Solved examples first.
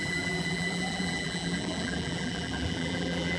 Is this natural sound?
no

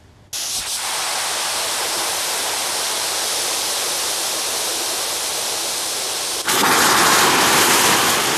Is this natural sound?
yes